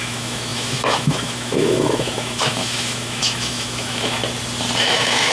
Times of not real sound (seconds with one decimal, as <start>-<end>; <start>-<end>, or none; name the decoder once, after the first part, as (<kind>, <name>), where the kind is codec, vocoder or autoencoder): 0.0-4.2 (autoencoder, DAC-VAE); 4.8-5.3